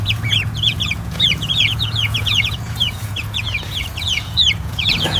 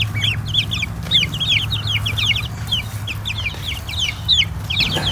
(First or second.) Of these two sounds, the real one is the second